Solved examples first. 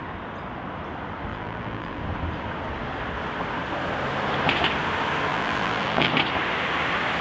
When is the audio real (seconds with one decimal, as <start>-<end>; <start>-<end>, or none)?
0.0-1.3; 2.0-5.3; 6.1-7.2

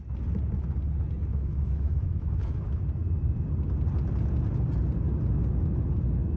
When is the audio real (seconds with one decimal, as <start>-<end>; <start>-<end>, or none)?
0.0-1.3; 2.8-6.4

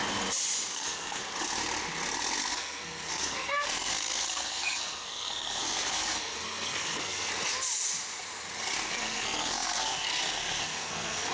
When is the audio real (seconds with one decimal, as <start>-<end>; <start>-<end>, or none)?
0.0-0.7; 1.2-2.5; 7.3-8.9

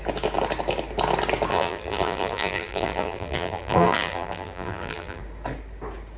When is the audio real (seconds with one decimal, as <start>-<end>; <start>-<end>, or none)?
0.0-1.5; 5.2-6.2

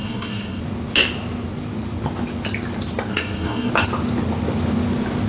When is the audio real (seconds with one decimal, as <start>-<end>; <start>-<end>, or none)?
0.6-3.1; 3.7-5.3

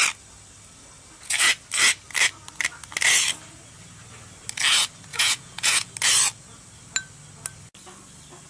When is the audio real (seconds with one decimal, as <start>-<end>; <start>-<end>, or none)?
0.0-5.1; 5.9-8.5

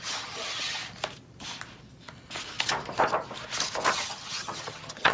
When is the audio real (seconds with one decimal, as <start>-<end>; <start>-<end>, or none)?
0.8-3.9

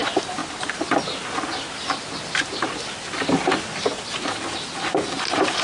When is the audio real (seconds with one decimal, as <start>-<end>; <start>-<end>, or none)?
0.4-3.8